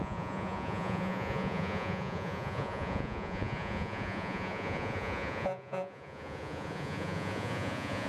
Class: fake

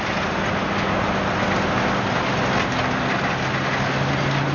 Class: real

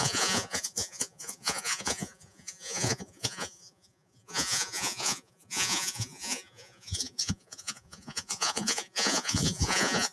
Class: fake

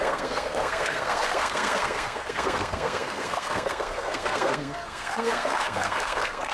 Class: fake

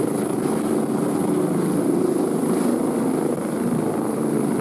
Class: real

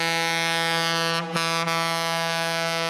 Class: real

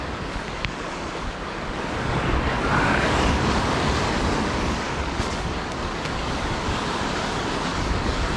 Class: fake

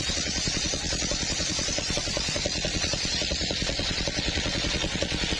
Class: fake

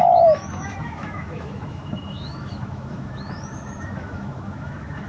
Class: fake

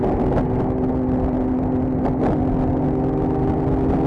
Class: real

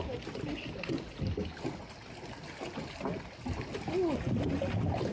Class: real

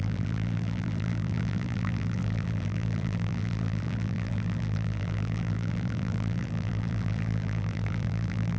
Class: fake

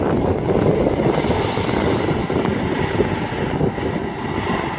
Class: real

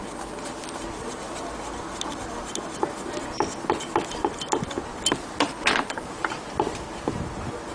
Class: real